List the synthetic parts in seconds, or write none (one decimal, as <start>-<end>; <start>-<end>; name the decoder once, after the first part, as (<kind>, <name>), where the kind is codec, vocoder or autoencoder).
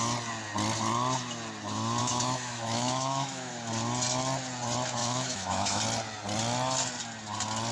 2.0-3.5 (autoencoder, DAC-VAE); 5.0-5.8